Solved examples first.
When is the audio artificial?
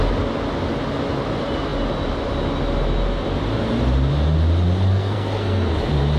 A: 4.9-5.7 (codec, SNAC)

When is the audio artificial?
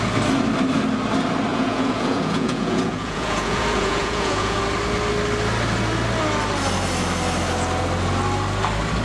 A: 1.5-4.6 (vocoder, Vocos)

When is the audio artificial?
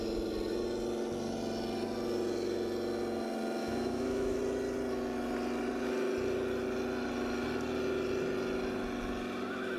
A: 3.6-4.4 (autoencoder, DAC-VAE)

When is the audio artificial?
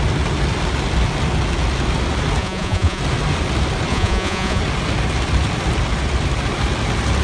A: 2.4-3.0 (vocoder, Vocos); 3.9-4.6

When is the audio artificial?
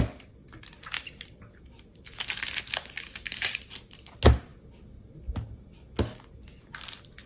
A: none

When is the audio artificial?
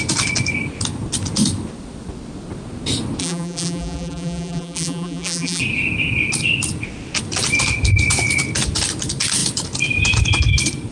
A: 3.2-5.6 (vocoder, BigVGAN v2)